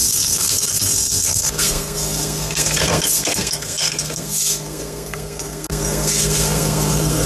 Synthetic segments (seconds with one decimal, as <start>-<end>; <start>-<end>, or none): 0.0-7.3